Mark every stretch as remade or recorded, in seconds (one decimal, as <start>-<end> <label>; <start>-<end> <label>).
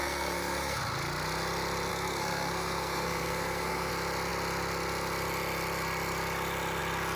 0.0-0.8 remade; 0.8-1.9 recorded; 1.9-3.9 remade; 3.9-7.2 recorded